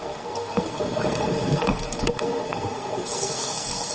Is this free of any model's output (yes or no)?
no